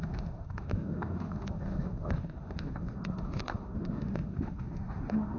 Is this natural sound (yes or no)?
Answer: no